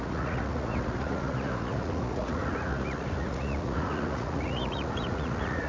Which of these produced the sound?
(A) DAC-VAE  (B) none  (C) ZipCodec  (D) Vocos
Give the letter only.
D